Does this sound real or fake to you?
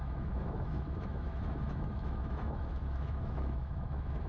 fake